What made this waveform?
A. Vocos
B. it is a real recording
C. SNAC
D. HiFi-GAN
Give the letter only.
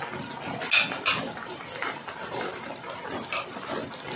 B